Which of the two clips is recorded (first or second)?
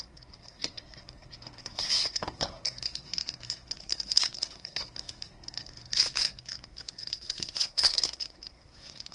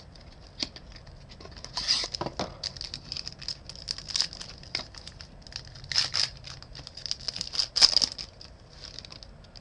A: second